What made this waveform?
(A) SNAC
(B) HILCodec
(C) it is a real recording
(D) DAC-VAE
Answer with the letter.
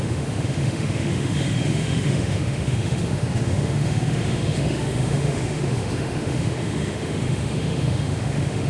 D